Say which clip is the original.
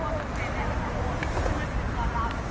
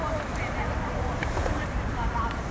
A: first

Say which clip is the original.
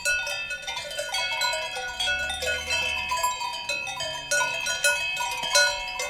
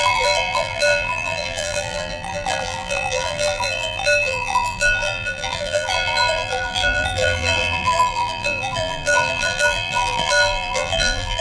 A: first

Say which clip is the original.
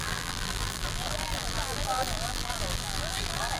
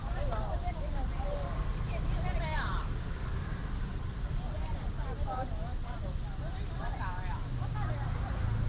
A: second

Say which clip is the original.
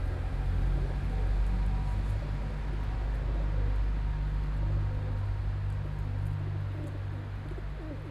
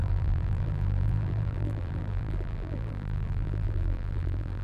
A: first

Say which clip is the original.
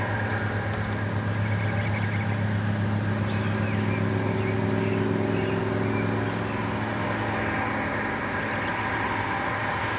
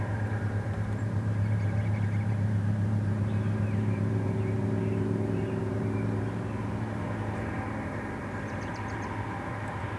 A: first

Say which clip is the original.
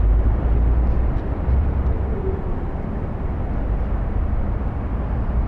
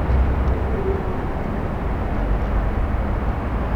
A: second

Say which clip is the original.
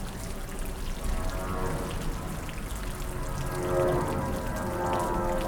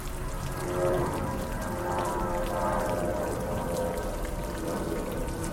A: first